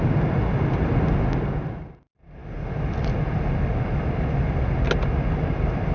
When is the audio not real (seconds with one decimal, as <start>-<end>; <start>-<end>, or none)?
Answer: none